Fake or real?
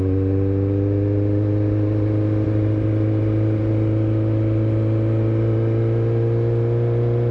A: real